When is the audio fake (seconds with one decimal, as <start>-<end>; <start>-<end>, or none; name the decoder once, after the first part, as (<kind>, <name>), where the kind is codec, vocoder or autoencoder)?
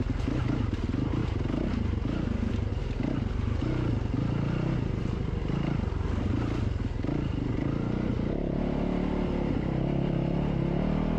none